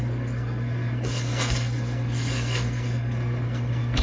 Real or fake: fake